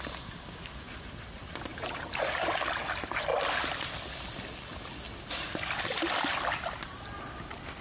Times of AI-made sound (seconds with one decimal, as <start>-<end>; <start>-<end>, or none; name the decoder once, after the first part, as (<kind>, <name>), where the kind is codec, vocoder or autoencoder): 1.7-2.3 (vocoder, BigVGAN v2)